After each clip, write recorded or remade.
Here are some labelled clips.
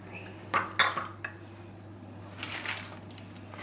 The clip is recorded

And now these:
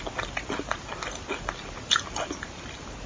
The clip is recorded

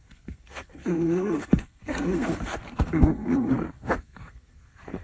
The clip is remade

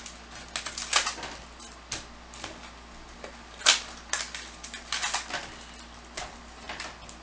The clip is recorded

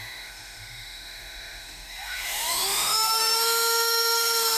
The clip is remade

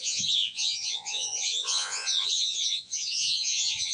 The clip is remade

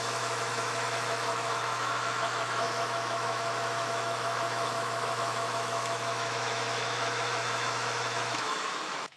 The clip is remade